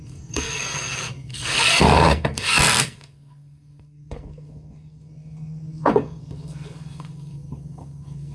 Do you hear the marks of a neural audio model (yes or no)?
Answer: yes